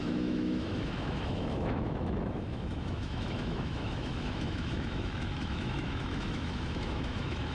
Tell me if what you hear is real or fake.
fake